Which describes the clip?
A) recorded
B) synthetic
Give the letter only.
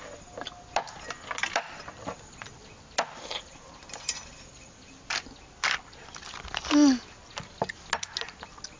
A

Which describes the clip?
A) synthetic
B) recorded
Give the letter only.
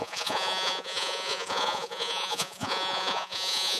A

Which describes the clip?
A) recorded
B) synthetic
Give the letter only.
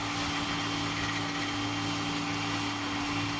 A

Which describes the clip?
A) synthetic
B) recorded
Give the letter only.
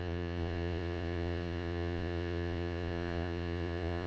A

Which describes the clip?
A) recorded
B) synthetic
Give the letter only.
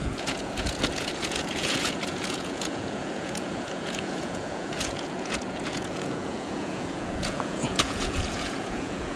B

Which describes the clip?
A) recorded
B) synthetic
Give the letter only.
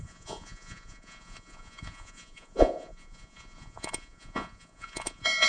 B